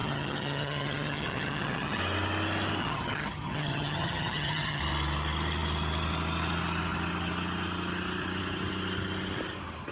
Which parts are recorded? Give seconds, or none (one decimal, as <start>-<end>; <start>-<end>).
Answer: 2.0-2.8; 4.8-9.9